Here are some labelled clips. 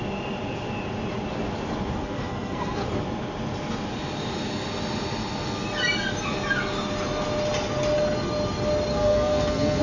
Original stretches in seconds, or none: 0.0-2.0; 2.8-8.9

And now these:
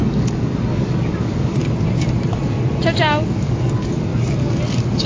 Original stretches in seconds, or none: 1.6-3.3; 4.1-5.1

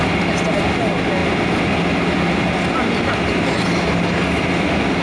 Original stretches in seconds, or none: 0.0-5.0

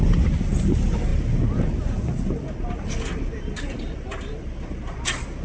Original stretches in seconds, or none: 0.0-5.4

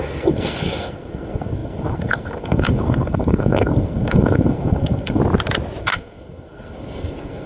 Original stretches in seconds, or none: 5.2-5.8

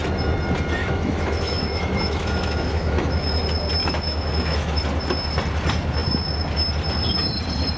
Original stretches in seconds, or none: 0.0-0.8; 3.4-3.8; 4.8-7.8